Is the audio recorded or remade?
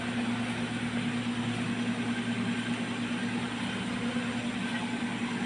recorded